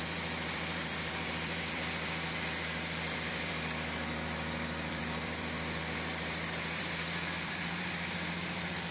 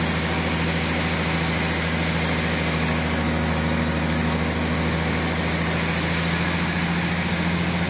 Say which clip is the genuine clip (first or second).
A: second